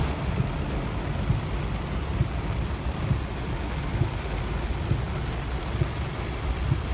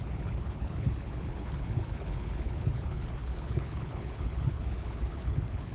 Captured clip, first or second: first